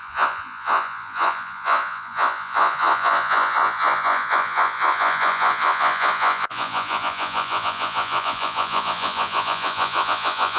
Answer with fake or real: fake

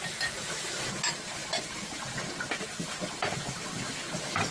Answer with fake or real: real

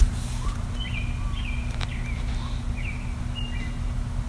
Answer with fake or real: real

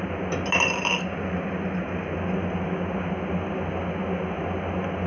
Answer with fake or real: real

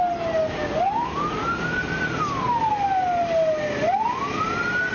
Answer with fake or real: real